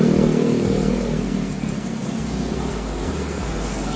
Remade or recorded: remade